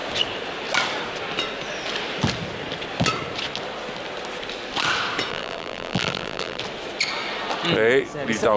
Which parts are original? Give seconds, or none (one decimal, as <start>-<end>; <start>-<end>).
0.0-5.3; 6.6-8.6